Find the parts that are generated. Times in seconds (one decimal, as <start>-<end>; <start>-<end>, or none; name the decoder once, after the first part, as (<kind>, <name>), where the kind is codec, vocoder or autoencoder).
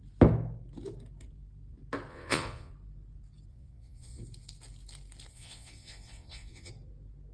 2.1-2.7 (vocoder, Vocos); 3.5-4.2; 5.3-6.7